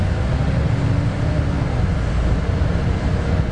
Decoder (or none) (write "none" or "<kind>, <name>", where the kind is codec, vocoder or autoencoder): none